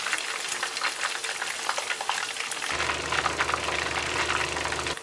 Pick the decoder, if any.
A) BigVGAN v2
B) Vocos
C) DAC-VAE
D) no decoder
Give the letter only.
D